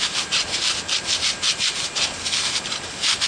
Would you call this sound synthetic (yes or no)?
yes